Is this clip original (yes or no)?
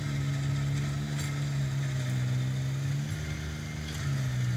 yes